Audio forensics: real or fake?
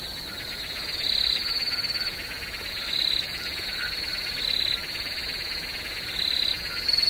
real